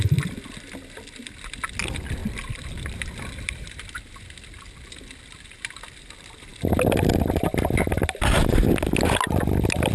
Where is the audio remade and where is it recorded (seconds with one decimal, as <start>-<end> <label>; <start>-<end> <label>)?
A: 0.0-2.2 recorded; 2.2-4.2 remade; 4.2-6.5 recorded; 6.5-7.1 remade; 7.1-9.9 recorded